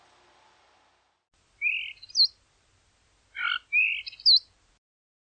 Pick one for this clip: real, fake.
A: real